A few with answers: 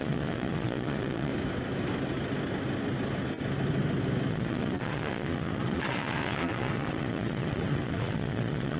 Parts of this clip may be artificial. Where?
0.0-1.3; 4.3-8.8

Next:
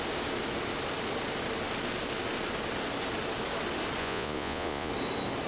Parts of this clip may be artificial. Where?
4.0-4.9

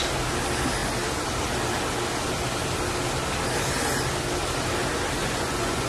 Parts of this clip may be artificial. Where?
5.2-5.9

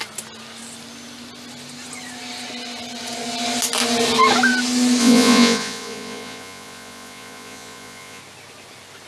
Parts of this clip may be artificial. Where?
5.0-8.2

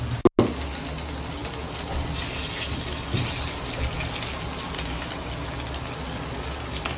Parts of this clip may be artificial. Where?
none